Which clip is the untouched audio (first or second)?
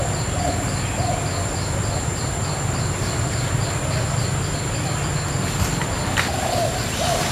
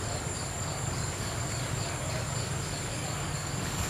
first